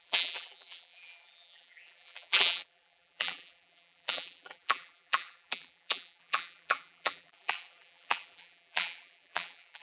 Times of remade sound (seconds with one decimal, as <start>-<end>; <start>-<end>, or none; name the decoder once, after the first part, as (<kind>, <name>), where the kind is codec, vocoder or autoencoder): 0.0-9.8 (vocoder, BigVGAN v2)